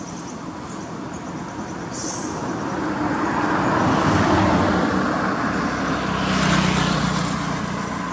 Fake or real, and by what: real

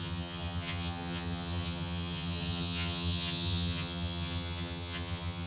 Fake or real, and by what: fake, vocoder, HiFi-GAN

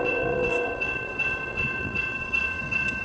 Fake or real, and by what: fake, vocoder, WaveNeXt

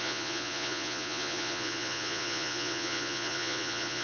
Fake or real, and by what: fake, vocoder, Vocos